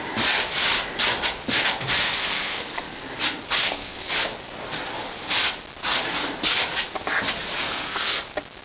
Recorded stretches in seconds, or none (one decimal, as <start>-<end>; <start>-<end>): 0.0-2.2; 3.0-3.6; 4.1-7.6; 8.2-8.6